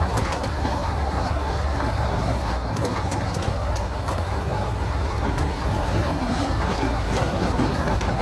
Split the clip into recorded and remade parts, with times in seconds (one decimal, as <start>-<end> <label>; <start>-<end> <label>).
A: 0.0-8.2 remade